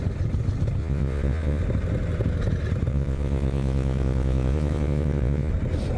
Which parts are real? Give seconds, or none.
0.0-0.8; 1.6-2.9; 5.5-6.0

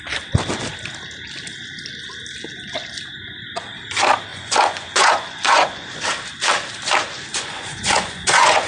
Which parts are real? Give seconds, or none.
0.0-4.3; 6.0-7.3

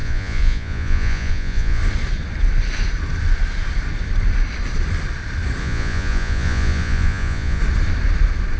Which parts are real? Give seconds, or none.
1.8-5.6; 7.6-8.6

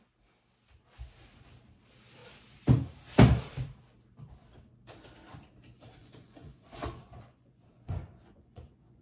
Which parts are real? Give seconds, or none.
0.0-6.0

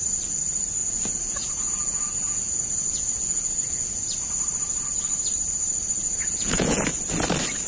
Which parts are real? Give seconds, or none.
0.0-0.8; 4.0-6.0; 6.8-7.7

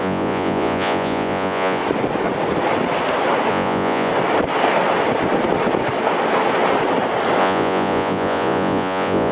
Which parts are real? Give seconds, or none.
1.8-3.5; 4.1-7.4

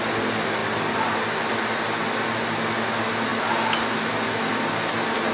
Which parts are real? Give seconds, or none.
0.0-5.3